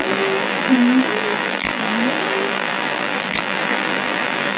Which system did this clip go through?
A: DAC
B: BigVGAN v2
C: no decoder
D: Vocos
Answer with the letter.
B